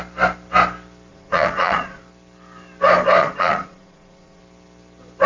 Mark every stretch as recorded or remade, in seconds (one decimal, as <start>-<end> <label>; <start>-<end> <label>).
0.0-1.1 recorded; 1.1-2.0 remade; 2.0-3.2 recorded; 3.2-4.4 remade; 4.4-5.3 recorded